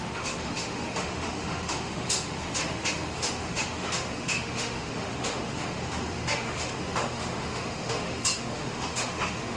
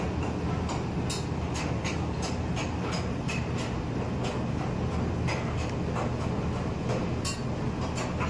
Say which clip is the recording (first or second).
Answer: second